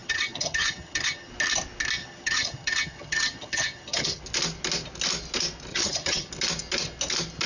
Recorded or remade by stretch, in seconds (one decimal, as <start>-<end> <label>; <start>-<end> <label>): 0.0-1.3 remade; 1.3-2.0 recorded; 2.0-4.2 remade; 4.2-5.7 recorded; 5.7-6.3 remade; 6.3-7.5 recorded